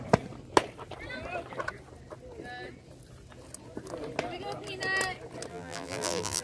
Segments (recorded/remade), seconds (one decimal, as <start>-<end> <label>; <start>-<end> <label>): 0.0-5.5 recorded; 5.5-6.4 remade